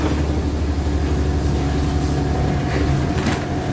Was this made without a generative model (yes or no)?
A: yes